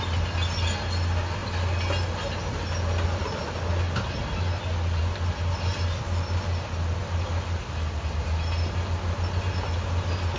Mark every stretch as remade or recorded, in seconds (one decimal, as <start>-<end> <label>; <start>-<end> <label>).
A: 0.0-10.4 recorded

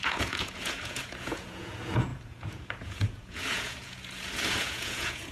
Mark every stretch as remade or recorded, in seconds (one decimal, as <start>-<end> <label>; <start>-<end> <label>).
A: 0.0-5.3 remade

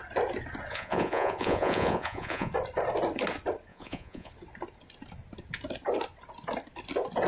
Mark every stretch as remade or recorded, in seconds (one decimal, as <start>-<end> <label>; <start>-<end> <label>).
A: 0.0-0.7 recorded; 0.7-2.5 remade; 2.5-3.7 recorded; 3.7-4.3 remade; 4.3-7.3 recorded

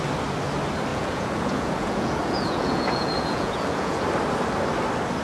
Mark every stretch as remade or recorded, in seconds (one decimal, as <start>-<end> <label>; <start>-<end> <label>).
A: 0.0-0.9 recorded; 0.9-4.0 remade; 4.0-5.2 recorded

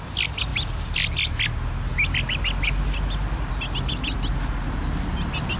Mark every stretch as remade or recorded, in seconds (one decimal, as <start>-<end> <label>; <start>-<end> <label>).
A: 0.0-5.6 recorded

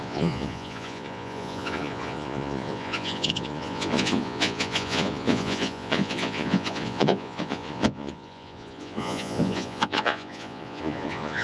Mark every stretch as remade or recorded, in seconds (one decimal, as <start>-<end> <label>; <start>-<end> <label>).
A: 0.0-11.4 remade

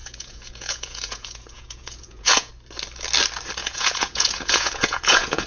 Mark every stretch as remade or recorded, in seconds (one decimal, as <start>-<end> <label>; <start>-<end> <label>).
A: 0.0-2.5 remade; 2.5-3.6 recorded; 3.6-5.5 remade

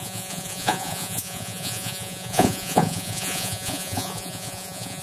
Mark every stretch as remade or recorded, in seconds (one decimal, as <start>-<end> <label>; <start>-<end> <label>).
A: 0.0-5.0 remade